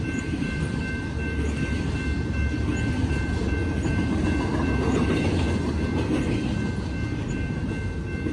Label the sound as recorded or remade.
recorded